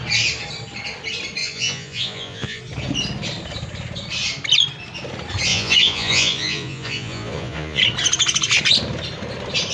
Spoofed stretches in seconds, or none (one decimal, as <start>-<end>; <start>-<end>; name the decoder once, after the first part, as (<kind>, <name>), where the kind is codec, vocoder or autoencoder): 1.4-2.6 (vocoder, Vocos); 5.5-7.8